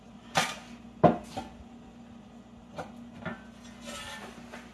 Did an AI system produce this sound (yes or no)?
no